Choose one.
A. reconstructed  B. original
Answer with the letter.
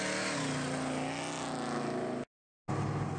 B